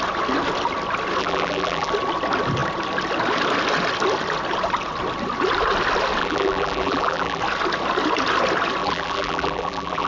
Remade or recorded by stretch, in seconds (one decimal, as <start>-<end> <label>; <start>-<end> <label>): 0.0-1.2 recorded; 1.2-1.9 remade; 1.9-6.2 recorded; 6.2-7.4 remade; 7.4-8.8 recorded; 8.8-10.1 remade